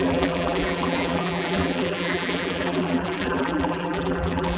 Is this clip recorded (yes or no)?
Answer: no